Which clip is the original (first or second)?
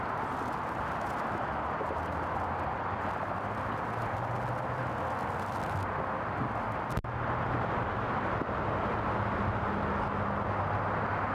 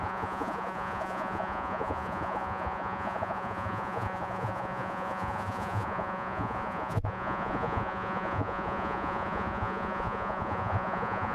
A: first